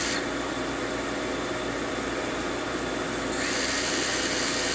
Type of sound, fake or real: real